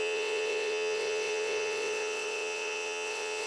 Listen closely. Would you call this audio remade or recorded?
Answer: remade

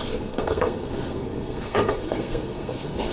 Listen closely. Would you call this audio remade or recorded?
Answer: remade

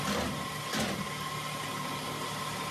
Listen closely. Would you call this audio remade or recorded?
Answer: recorded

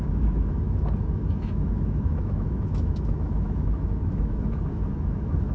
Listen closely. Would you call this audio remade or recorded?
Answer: remade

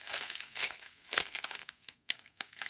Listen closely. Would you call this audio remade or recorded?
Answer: remade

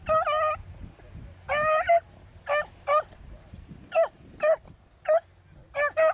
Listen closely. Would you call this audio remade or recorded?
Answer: recorded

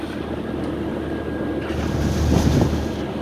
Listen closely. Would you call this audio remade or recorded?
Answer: recorded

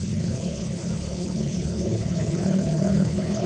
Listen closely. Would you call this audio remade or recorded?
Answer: remade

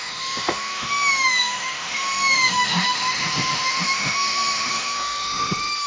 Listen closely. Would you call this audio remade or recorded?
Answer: remade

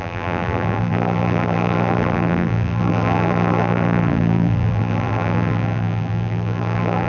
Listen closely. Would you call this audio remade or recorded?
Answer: remade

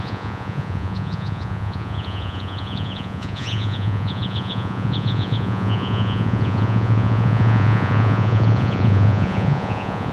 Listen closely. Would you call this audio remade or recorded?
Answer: remade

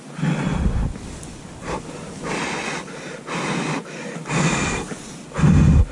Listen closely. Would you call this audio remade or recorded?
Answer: recorded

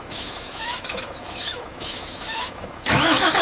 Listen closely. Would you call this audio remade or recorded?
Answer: remade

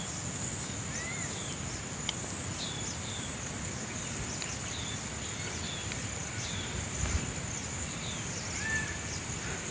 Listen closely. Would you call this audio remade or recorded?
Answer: recorded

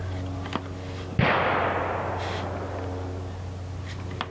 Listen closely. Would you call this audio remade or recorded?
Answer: recorded